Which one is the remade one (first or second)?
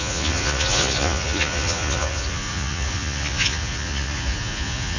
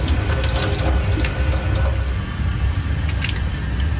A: first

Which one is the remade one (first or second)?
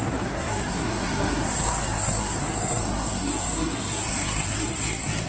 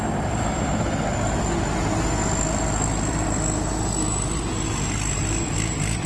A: first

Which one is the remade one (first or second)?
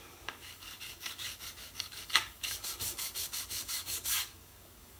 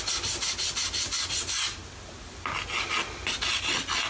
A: first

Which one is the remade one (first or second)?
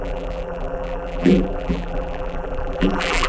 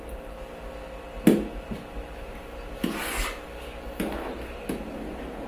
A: first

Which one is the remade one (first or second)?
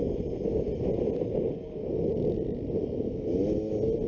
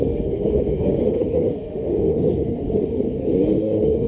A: second